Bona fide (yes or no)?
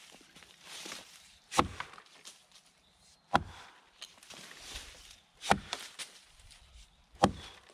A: yes